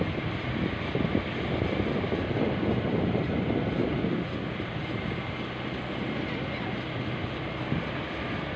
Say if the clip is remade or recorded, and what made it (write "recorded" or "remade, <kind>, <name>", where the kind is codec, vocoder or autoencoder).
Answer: recorded